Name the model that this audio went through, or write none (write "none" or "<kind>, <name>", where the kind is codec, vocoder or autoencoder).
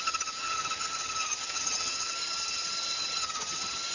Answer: vocoder, HiFi-GAN